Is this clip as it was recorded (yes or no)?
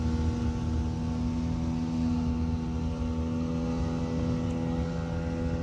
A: yes